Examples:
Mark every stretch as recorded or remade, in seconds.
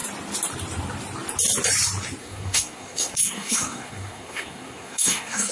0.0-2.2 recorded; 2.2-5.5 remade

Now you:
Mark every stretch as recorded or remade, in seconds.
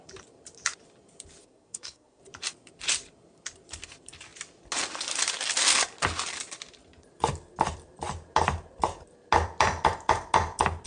0.0-1.4 recorded; 1.4-2.2 remade; 2.2-10.9 recorded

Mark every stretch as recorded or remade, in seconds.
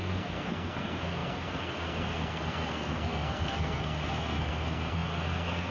0.0-5.7 remade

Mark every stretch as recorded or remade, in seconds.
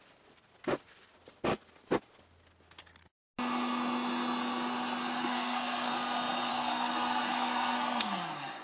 0.0-5.2 recorded; 5.2-5.9 remade; 5.9-6.5 recorded; 6.5-8.6 remade